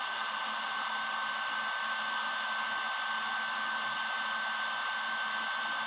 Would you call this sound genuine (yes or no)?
yes